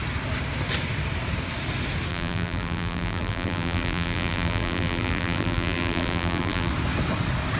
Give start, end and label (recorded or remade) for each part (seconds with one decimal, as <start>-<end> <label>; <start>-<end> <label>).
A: 0.0-2.1 recorded; 2.1-6.7 remade; 6.7-7.6 recorded